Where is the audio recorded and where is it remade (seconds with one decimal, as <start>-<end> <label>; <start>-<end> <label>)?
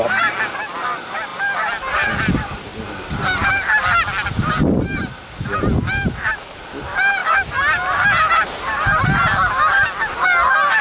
0.0-10.8 recorded